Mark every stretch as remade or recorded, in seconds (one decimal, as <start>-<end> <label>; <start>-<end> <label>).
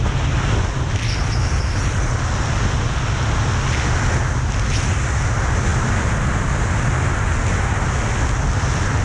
0.0-9.0 recorded